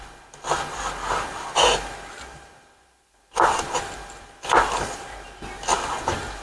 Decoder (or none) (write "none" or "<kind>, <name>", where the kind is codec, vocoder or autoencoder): none